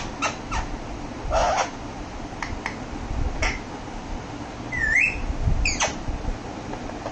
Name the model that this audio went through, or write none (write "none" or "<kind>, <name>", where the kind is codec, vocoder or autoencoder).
none